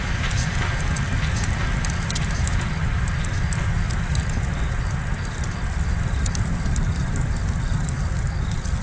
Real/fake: real